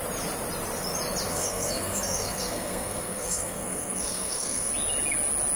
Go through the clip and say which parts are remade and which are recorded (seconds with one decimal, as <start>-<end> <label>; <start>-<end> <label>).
0.0-1.3 recorded; 1.3-4.7 remade; 4.7-5.6 recorded